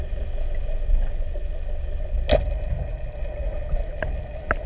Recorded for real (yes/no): yes